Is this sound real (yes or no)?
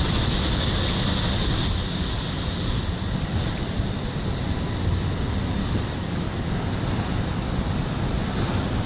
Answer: yes